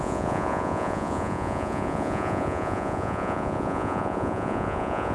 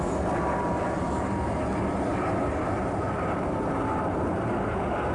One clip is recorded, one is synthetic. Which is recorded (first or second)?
second